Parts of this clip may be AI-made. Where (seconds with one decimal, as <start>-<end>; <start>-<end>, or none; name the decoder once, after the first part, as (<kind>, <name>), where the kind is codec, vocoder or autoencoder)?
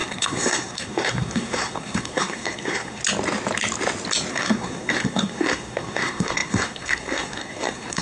0.0-3.0 (codec, SNAC); 4.3-8.0